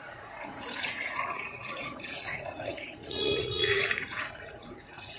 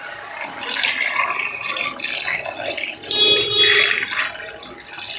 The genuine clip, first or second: second